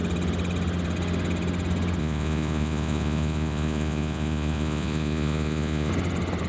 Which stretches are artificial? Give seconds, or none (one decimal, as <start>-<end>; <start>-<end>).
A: 2.0-5.9